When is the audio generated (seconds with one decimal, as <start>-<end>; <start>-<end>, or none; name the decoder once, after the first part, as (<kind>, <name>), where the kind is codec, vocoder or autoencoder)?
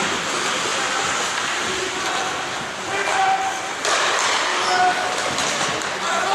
4.5-5.4 (codec, DAC)